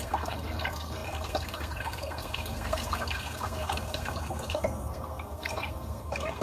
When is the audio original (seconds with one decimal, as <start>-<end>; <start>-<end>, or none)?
none